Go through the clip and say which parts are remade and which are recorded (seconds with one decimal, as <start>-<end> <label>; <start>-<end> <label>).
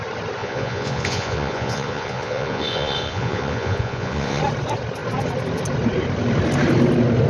0.0-0.4 recorded; 0.4-4.4 remade; 4.4-7.3 recorded